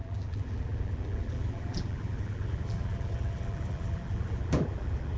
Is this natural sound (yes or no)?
no